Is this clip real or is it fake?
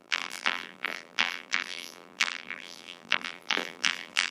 fake